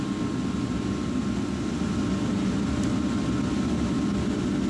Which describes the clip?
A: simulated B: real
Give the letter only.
B